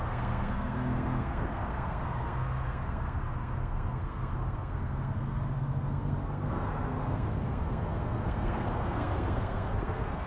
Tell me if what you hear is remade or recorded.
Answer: remade